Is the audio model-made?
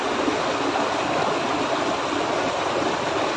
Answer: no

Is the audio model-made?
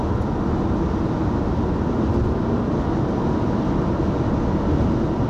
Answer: no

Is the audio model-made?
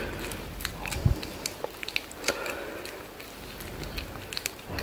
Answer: no